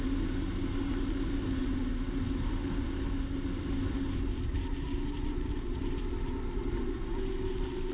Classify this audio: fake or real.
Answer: real